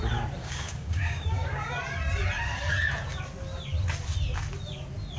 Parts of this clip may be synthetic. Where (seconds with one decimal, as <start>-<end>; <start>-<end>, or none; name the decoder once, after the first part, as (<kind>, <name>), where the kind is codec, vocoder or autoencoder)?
0.4-1.6 (codec, DAC)